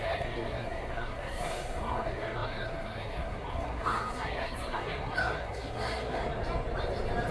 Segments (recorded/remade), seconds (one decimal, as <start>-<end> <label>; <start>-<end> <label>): 0.0-6.2 remade; 6.2-7.3 recorded